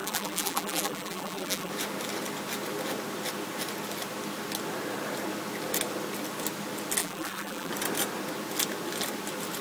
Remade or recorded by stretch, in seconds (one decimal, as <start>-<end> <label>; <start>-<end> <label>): 0.0-1.7 remade; 1.7-7.0 recorded; 7.0-7.7 remade; 7.7-9.6 recorded